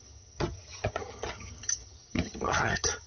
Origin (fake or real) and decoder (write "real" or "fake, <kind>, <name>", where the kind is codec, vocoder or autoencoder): fake, vocoder, HiFi-GAN